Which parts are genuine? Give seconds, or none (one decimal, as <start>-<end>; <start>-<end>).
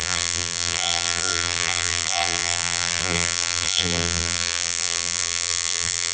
none